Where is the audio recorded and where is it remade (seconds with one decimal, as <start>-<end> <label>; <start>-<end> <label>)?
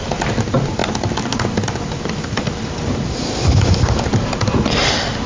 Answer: 0.0-0.8 recorded; 0.8-4.0 remade; 4.0-5.3 recorded